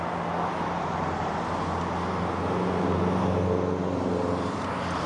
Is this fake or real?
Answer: real